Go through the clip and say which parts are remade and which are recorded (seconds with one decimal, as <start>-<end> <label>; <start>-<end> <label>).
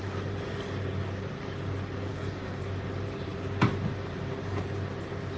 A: 0.0-2.1 recorded; 2.1-2.6 remade; 2.6-5.4 recorded